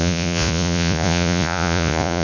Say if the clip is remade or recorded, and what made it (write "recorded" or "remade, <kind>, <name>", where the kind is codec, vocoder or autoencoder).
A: remade, vocoder, Vocos